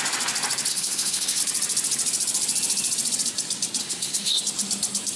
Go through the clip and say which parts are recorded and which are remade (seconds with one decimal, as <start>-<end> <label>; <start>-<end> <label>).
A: 0.0-0.7 recorded; 0.7-1.4 remade; 1.4-3.8 recorded; 3.8-4.4 remade; 4.4-5.2 recorded